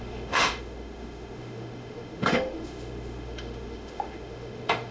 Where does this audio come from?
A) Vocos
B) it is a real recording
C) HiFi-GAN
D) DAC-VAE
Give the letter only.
D